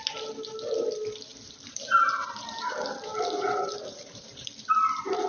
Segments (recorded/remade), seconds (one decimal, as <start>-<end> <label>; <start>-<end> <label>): 0.0-1.3 recorded; 1.3-4.5 remade; 4.5-5.3 recorded